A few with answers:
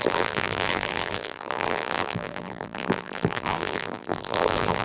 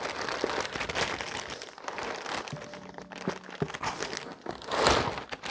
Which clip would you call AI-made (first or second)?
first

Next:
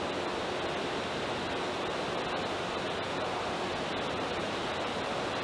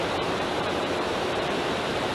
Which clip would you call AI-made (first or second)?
second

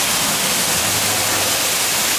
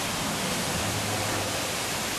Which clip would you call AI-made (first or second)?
second